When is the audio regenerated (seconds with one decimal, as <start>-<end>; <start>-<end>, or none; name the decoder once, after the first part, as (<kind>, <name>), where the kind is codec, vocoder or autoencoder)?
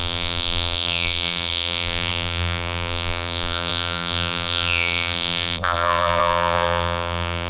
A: 0.0-7.5 (vocoder, BigVGAN v2)